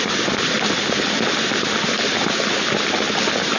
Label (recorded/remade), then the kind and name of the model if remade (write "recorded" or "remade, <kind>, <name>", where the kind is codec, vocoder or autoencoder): recorded